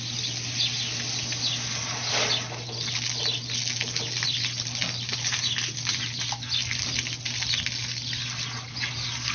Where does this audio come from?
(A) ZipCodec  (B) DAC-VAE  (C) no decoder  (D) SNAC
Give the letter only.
C